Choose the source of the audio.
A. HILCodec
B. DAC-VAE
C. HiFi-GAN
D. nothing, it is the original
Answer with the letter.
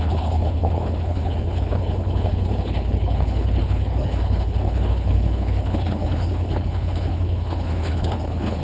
A